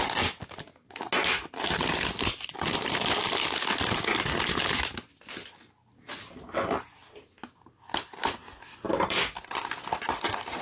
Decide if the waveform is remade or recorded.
recorded